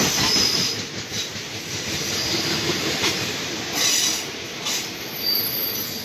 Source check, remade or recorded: remade